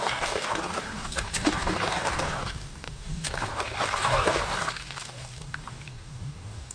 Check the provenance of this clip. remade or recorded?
remade